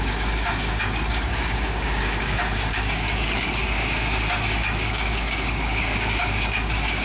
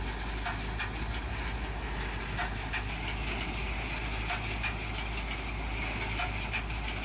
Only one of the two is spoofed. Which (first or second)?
first